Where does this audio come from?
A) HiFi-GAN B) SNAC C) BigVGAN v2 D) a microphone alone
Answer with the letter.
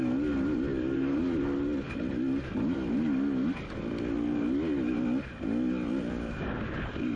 D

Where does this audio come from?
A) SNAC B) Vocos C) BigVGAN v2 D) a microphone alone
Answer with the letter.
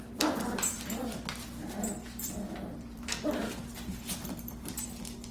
C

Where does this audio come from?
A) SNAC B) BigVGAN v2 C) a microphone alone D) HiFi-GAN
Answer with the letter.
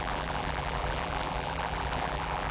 B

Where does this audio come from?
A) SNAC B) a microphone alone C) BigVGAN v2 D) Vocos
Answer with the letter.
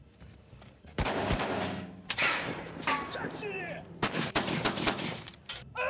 C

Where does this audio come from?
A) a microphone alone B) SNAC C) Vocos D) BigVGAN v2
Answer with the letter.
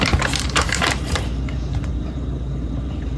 D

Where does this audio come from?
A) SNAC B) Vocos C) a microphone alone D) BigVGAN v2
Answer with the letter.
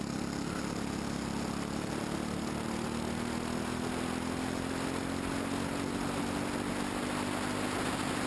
C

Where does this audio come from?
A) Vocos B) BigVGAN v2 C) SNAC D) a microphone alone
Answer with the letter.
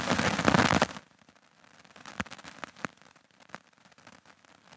B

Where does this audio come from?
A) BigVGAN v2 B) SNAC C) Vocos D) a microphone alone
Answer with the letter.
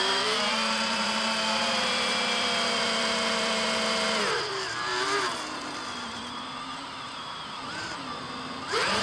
A